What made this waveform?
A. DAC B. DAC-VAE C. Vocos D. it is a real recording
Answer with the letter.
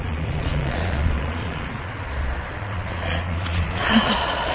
C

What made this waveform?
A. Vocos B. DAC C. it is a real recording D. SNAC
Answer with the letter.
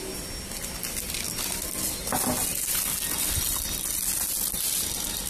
C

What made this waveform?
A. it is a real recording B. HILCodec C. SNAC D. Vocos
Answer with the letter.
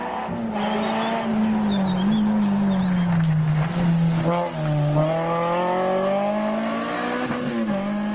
A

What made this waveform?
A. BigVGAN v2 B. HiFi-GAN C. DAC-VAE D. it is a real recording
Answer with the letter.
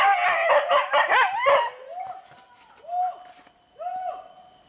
D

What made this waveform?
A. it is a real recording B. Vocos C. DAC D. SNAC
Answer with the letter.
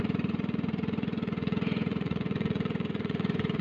B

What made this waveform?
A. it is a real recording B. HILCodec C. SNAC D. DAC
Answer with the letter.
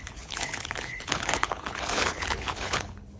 B